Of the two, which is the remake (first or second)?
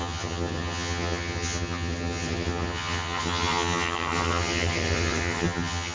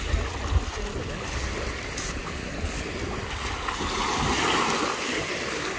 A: first